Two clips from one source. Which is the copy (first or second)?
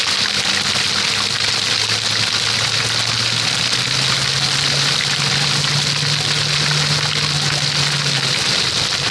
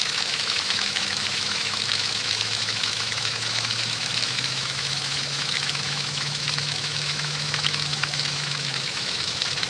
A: second